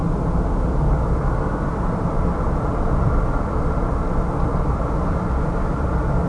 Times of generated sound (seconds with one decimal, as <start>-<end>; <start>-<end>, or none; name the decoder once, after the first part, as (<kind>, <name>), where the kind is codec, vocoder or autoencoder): none